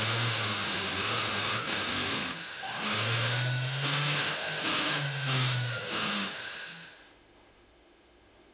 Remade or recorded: remade